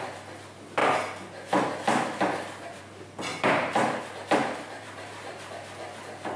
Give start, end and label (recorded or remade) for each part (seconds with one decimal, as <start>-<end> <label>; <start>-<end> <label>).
0.0-3.3 recorded; 3.3-4.0 remade; 4.0-4.4 recorded; 4.4-5.4 remade; 5.4-6.4 recorded